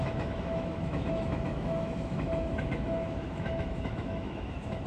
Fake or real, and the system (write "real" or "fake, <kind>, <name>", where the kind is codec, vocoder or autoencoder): fake, autoencoder, DAC-VAE